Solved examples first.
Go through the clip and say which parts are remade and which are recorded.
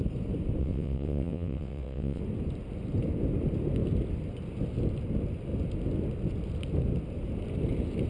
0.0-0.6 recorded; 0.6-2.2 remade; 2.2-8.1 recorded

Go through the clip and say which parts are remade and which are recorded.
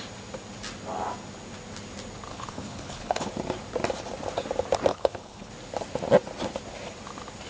0.0-2.3 recorded; 2.3-3.3 remade; 3.3-4.9 recorded; 4.9-5.5 remade; 5.5-7.5 recorded